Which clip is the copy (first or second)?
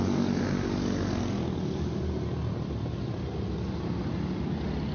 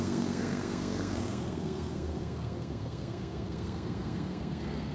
second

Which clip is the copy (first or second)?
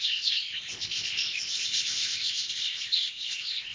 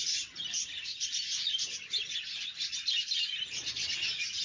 first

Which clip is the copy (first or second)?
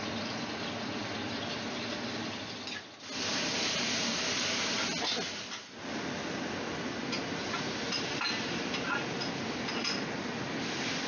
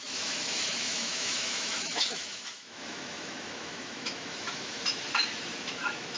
second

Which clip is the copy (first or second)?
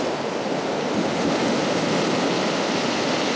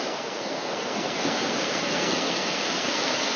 second